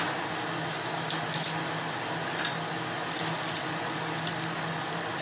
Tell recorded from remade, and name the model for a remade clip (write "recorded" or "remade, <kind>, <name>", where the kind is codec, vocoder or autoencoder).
recorded